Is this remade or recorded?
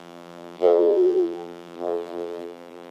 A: remade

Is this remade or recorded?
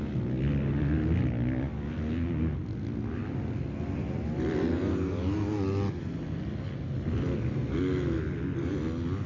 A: recorded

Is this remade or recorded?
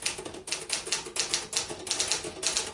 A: recorded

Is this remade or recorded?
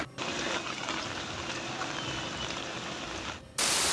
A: recorded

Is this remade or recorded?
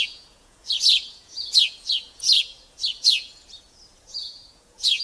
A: remade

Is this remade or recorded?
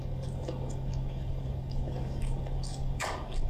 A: remade